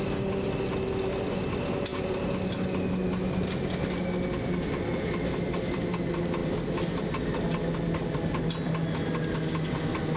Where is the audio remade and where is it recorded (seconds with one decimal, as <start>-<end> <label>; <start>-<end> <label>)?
0.0-10.2 recorded